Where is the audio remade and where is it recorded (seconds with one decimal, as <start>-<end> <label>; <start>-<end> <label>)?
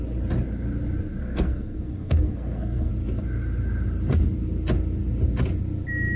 0.0-1.2 recorded; 1.2-2.9 remade; 2.9-6.2 recorded